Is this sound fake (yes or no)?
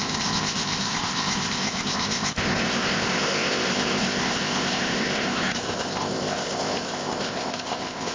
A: yes